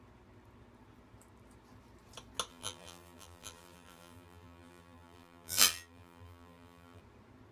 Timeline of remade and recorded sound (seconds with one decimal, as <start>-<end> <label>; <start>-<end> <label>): 0.0-2.5 recorded; 2.5-7.0 remade; 7.0-7.5 recorded